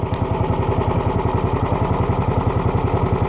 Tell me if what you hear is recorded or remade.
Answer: recorded